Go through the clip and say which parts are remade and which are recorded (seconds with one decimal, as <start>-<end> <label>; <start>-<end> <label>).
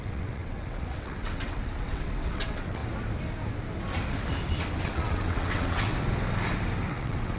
0.0-2.8 remade; 2.8-4.8 recorded; 4.8-5.9 remade; 5.9-6.9 recorded; 6.9-7.4 remade